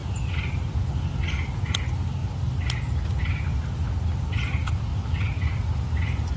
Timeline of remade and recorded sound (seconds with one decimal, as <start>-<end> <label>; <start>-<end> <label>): 0.0-2.2 remade; 2.2-4.1 recorded; 4.1-4.9 remade; 4.9-6.4 recorded